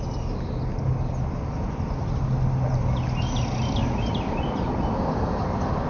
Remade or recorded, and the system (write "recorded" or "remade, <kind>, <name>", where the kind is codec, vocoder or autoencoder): recorded